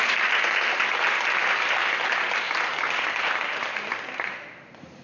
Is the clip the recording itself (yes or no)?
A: yes